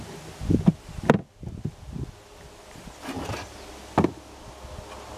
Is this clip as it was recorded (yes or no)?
yes